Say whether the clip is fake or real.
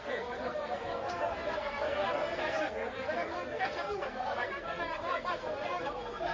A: fake